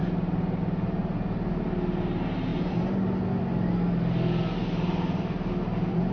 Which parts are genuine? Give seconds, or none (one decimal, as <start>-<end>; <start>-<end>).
0.0-6.1